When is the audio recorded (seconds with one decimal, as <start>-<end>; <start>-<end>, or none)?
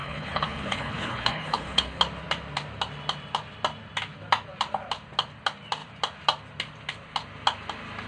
2.0-8.1